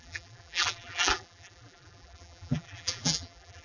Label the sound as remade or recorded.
remade